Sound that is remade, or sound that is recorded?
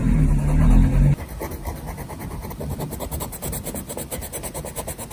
recorded